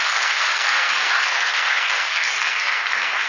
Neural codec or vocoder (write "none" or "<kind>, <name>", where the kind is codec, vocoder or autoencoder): codec, SNAC